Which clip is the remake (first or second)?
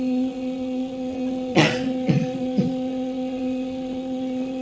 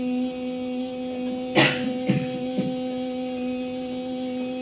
first